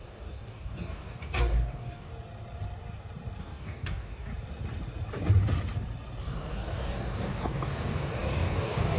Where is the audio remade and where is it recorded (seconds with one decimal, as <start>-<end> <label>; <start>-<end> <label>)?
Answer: 0.0-2.1 remade; 2.1-3.4 recorded; 3.4-4.3 remade; 4.3-6.2 recorded; 6.2-9.0 remade